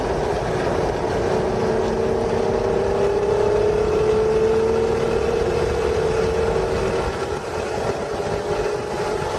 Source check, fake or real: real